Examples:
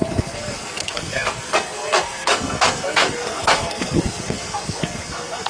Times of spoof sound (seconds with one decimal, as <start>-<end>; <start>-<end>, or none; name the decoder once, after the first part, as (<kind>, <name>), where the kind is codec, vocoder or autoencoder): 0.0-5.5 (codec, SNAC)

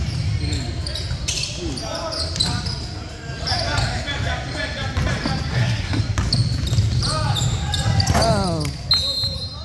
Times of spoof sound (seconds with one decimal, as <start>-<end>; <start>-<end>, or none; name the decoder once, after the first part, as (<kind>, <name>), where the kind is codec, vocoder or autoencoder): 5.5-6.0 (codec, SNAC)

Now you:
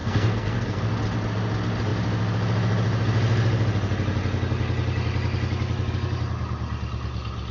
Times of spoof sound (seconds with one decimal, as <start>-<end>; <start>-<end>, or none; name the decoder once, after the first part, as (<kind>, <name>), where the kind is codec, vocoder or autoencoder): 0.0-0.8 (codec, SNAC)

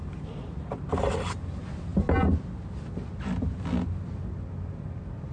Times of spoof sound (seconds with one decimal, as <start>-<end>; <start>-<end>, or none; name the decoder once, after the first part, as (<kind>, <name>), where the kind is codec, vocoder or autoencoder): none

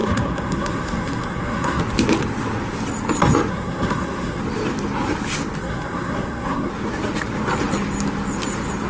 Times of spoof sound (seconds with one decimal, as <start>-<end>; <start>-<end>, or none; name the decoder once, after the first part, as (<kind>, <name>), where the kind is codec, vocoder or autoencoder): 0.0-1.8 (codec, SNAC); 3.5-4.4; 5.6-6.7

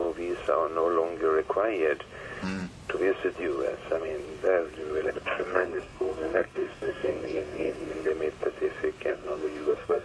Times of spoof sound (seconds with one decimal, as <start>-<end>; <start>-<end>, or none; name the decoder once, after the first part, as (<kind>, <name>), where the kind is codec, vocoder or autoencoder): 5.1-8.1 (codec, SNAC); 9.1-10.0

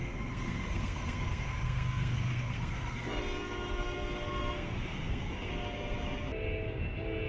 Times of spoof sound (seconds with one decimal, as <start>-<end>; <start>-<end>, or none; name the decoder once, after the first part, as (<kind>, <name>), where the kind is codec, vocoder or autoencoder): 0.0-3.2 (codec, SNAC); 4.4-5.5

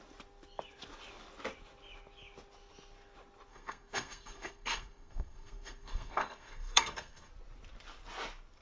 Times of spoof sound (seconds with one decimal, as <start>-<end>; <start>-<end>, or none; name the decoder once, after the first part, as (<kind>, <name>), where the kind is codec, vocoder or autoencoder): 3.5-7.3 (codec, SNAC)